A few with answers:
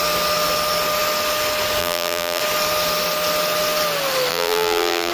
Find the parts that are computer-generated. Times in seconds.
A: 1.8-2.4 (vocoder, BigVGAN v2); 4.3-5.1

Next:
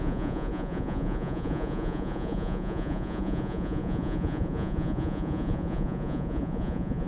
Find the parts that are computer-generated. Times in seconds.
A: 0.0-7.1 (vocoder, Vocos)